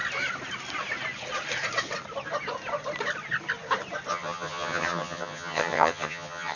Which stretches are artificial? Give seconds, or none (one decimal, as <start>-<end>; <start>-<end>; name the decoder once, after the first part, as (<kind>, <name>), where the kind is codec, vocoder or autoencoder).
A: 4.1-6.6 (vocoder, HiFi-GAN)